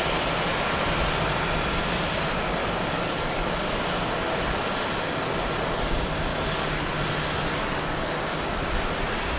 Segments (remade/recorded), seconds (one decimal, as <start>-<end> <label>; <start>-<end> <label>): 0.0-2.6 recorded; 2.6-3.7 remade; 3.7-6.3 recorded; 6.3-6.9 remade; 6.9-7.5 recorded; 7.5-8.1 remade; 8.1-9.4 recorded